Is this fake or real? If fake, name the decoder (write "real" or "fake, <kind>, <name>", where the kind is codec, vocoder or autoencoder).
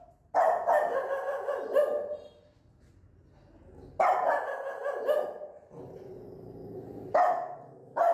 real